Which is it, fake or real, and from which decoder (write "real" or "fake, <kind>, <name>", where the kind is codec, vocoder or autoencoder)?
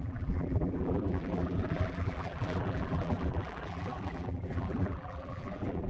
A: fake, vocoder, BigVGAN v2